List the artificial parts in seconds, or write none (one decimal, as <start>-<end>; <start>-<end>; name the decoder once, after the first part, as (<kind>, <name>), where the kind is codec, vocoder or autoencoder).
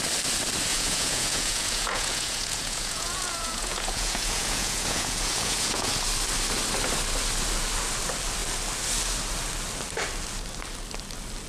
0.7-5.9 (vocoder, Vocos)